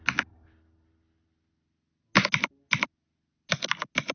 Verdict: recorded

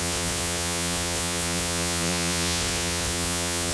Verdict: remade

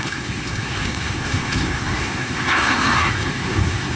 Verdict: remade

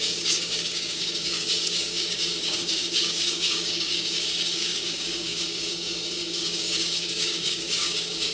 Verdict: remade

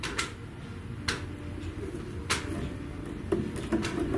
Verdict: recorded